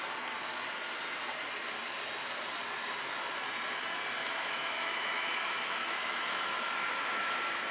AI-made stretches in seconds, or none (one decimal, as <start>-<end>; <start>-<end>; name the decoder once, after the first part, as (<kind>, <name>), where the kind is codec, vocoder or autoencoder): 4.2-7.3 (autoencoder, DAC-VAE)